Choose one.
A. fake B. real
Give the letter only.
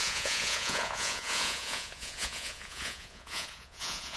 A